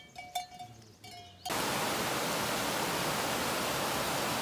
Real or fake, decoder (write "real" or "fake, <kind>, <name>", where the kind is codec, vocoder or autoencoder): real